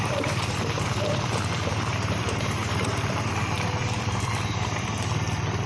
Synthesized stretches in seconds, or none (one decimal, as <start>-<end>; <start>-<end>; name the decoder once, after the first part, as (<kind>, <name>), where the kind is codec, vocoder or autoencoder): 0.0-5.7 (vocoder, BigVGAN v2)